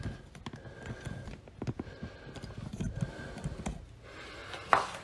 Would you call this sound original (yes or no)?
yes